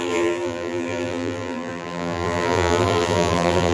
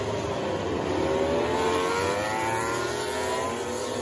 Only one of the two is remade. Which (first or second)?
first